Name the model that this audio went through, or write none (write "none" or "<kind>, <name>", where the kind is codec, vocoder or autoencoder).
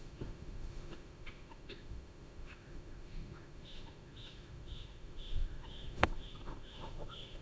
autoencoder, DAC-VAE